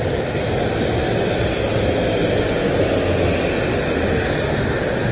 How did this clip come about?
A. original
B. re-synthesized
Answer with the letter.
A